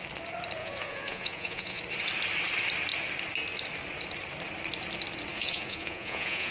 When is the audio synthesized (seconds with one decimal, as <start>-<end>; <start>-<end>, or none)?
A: 0.6-1.8; 5.3-6.5